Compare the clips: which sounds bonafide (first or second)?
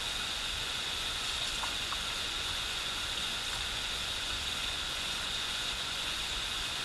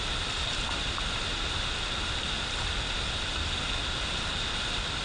second